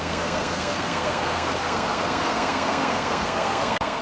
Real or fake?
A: fake